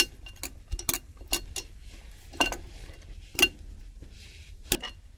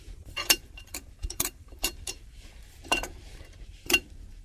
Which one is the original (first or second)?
first